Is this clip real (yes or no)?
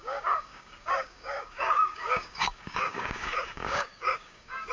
no